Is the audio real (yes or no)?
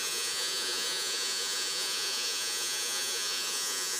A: no